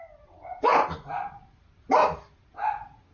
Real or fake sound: real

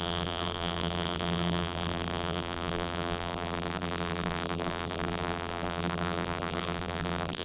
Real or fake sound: fake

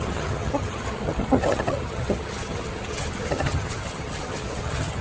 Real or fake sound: fake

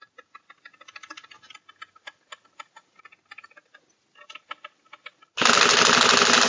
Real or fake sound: real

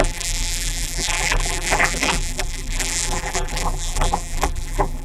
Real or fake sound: fake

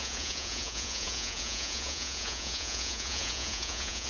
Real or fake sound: fake